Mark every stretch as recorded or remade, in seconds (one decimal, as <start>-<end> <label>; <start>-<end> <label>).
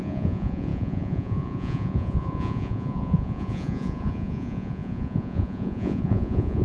0.0-6.6 remade